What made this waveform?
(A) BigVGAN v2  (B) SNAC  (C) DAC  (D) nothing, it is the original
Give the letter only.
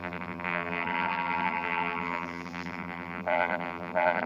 A